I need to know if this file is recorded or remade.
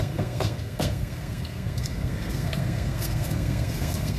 remade